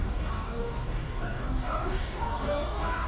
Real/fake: fake